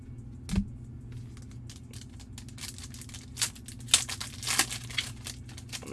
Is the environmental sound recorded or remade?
recorded